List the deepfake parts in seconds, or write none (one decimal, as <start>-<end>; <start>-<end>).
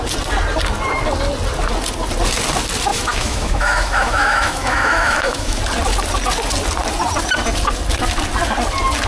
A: 2.9-5.6